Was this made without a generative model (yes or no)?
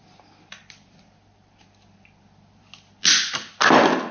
yes